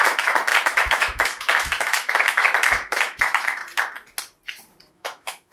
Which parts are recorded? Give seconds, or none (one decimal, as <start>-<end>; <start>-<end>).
3.6-4.9